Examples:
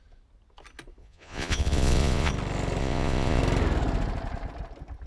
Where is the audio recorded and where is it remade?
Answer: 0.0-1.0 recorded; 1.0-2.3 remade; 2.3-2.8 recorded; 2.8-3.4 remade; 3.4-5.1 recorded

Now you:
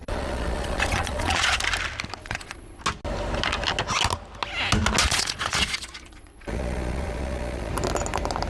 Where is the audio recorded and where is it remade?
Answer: 0.0-1.6 remade; 1.6-2.2 recorded; 2.2-2.8 remade; 2.8-5.0 recorded; 5.0-7.7 remade; 7.7-8.5 recorded

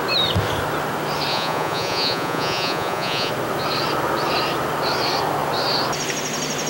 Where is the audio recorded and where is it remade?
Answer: 0.0-1.3 recorded; 1.3-3.3 remade; 3.3-6.7 recorded